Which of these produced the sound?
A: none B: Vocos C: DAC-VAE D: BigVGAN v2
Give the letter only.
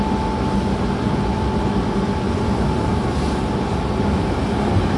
A